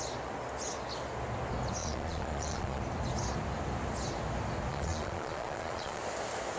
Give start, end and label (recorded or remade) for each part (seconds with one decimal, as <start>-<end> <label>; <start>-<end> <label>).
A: 0.0-1.8 recorded; 1.8-2.8 remade; 2.8-4.7 recorded; 4.7-6.0 remade; 6.0-6.6 recorded